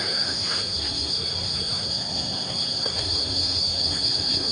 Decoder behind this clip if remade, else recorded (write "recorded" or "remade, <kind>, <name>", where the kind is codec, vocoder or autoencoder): remade, codec, SNAC